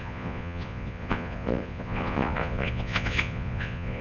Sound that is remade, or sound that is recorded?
remade